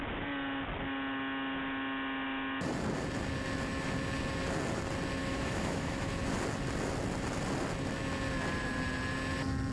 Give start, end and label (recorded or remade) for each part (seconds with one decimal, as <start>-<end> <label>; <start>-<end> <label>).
0.0-5.2 recorded; 5.2-6.1 remade; 6.1-9.7 recorded